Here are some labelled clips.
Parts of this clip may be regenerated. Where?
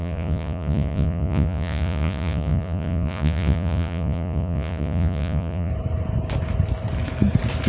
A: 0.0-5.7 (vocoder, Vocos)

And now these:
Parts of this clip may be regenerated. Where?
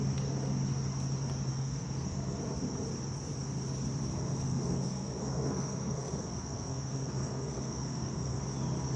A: 1.5-2.4 (codec, SNAC); 4.1-8.4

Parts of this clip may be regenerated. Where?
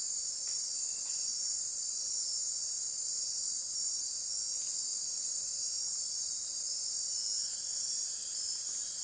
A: 1.3-2.0 (vocoder, BigVGAN v2); 2.8-4.0; 4.9-6.1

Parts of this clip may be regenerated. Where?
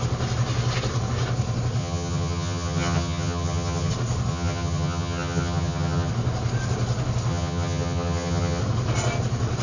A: 1.8-3.9 (vocoder, HiFi-GAN); 4.3-6.1; 7.3-8.6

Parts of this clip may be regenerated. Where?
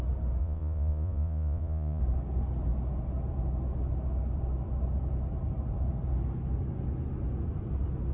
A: 0.4-2.0 (vocoder, Vocos)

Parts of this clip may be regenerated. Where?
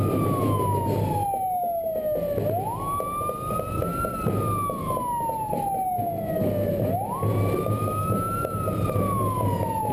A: none